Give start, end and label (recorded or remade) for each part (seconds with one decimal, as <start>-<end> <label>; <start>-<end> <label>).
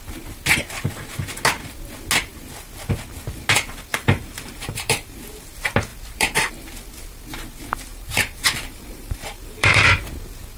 0.0-3.9 recorded; 3.9-5.2 remade; 5.2-5.9 recorded; 5.9-6.5 remade; 6.5-7.9 recorded; 7.9-10.0 remade; 10.0-10.6 recorded